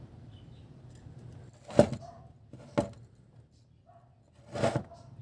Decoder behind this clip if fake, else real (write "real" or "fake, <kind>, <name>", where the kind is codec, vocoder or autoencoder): real